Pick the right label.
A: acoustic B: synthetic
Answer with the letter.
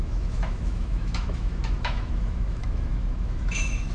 B